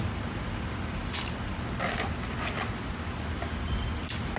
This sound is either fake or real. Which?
real